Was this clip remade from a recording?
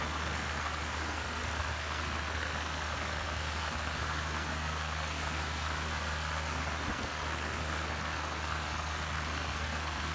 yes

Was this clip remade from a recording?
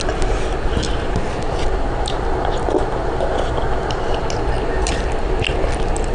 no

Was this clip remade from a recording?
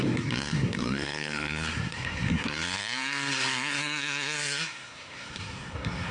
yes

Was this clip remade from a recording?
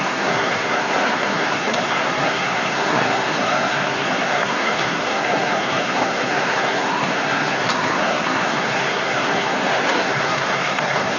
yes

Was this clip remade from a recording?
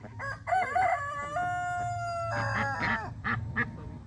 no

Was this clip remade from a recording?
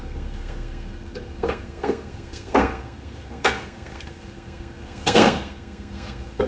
yes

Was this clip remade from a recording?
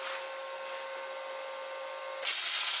no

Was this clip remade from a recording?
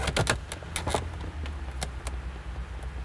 no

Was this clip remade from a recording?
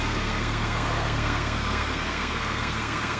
yes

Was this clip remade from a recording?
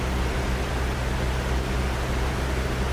no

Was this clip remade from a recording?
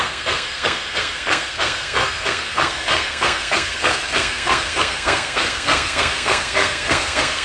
yes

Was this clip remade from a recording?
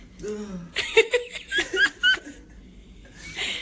no